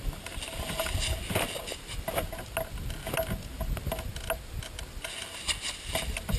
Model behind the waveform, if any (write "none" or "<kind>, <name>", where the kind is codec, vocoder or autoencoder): none